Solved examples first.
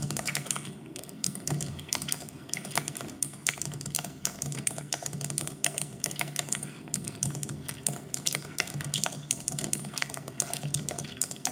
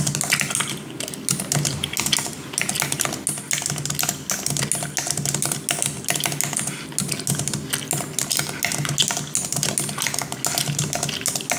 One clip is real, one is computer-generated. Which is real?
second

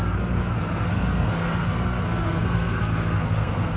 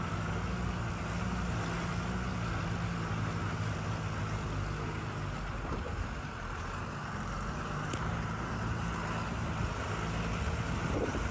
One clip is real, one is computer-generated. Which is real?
second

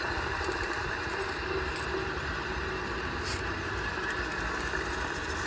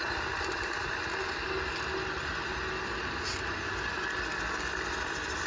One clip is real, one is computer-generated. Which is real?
second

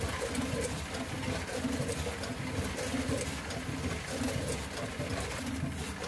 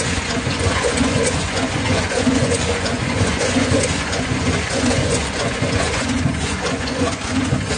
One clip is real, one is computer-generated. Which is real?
first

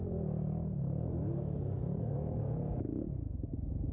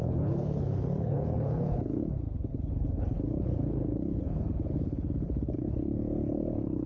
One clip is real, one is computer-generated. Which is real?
first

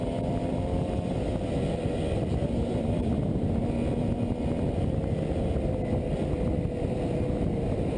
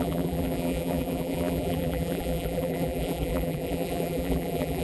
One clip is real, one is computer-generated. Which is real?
first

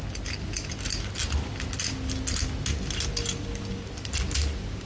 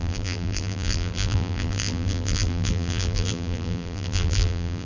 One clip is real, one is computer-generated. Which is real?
first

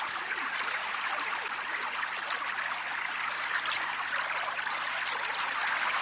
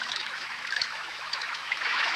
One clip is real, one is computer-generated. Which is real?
first